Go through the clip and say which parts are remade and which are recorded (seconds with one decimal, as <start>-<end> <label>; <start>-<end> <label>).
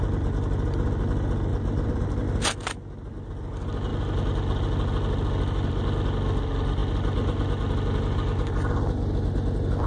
0.0-9.9 recorded